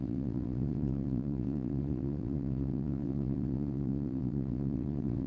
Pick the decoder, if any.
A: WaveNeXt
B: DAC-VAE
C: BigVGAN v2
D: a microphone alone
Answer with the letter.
A